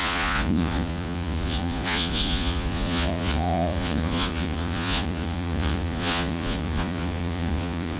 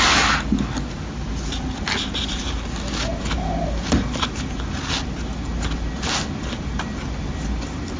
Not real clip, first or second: first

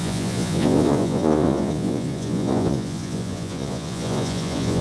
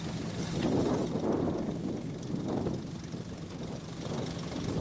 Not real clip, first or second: first